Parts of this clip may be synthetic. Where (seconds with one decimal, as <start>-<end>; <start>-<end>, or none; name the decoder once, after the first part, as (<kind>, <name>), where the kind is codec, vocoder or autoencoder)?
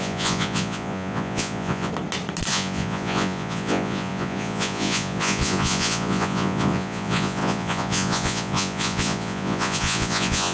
0.0-1.9 (vocoder, Vocos); 2.5-10.5